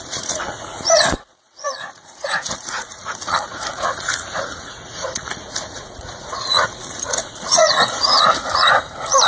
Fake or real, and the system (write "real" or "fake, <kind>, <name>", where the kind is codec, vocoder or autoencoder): fake, vocoder, Vocos